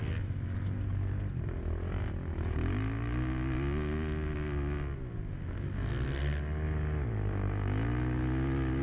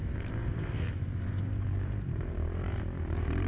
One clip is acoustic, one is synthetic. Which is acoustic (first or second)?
first